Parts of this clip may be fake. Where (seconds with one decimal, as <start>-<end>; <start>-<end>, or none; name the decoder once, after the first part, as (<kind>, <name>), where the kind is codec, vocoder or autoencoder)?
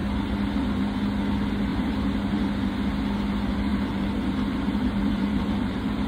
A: 1.7-2.4 (vocoder, BigVGAN v2); 3.7-6.1